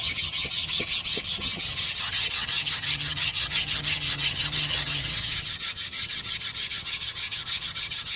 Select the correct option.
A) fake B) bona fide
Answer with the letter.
A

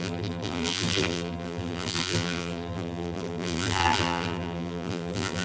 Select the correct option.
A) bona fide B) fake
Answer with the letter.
B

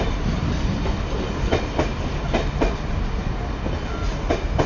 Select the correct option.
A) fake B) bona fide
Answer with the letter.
B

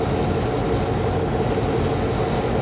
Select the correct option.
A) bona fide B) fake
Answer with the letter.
A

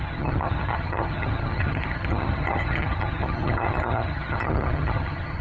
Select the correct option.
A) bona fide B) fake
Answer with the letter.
B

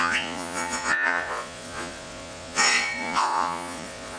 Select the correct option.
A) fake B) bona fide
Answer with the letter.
A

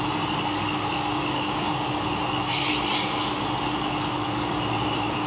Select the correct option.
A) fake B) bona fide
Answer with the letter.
B